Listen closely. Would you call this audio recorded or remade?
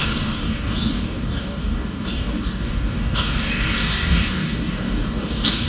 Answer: remade